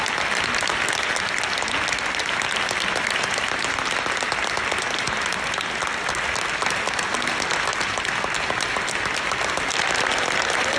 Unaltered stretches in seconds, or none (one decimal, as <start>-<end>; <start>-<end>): 0.0-10.8